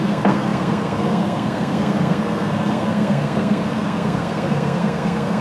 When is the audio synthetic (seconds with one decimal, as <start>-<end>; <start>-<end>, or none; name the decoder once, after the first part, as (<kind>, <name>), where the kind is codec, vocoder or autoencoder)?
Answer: 0.0-5.4 (codec, SNAC)